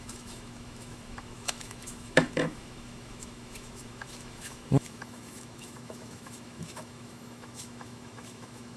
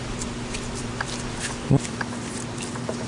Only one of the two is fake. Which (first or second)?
first